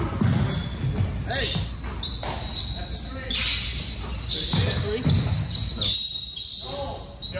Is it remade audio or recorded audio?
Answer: recorded